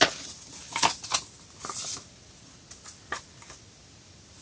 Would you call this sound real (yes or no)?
yes